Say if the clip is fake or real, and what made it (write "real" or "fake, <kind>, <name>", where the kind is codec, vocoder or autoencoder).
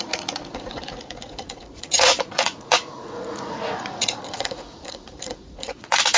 fake, vocoder, Vocos